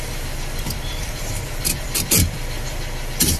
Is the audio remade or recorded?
remade